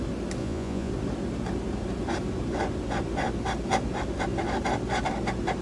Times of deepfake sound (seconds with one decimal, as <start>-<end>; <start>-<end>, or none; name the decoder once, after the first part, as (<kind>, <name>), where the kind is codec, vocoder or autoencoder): 0.4-0.9 (vocoder, Vocos)